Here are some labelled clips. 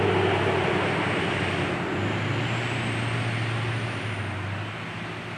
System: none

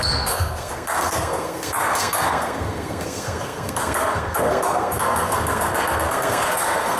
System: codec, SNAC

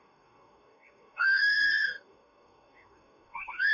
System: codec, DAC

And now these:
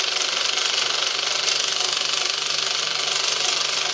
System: none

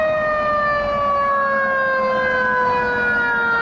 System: none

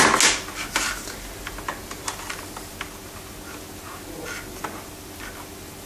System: none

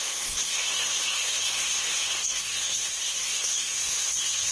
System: codec, SNAC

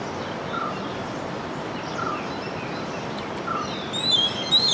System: none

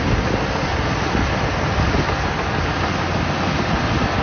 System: none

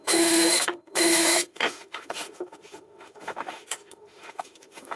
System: autoencoder, DAC-VAE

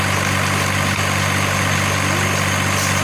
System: none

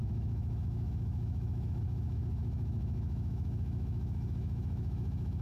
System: autoencoder, DAC-VAE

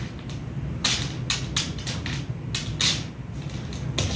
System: none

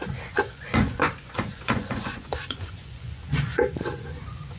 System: vocoder, Vocos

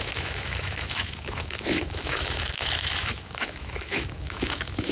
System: autoencoder, DAC-VAE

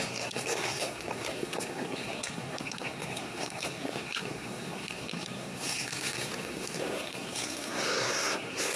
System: codec, SNAC